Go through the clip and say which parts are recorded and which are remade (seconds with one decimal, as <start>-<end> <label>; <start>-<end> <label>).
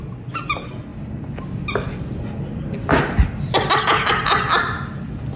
0.0-5.4 recorded